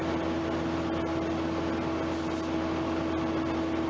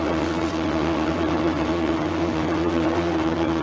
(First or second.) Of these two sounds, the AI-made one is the second